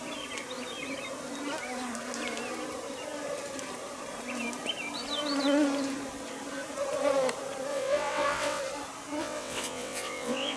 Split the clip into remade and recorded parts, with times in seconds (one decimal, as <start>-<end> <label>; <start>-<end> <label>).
0.0-7.7 recorded; 7.7-8.6 remade; 8.6-9.2 recorded; 9.2-10.6 remade